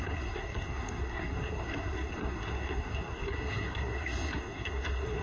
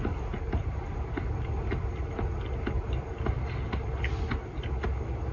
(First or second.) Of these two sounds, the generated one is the first